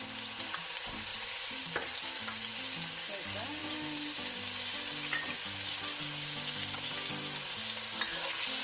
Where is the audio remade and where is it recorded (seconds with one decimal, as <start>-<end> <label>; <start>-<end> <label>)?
0.0-1.1 recorded; 1.1-1.6 remade; 1.6-8.6 recorded